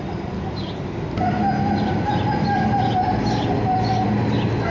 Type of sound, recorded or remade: recorded